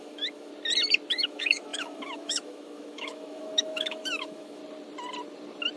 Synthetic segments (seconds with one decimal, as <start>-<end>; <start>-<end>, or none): 0.0-0.5; 1.1-4.6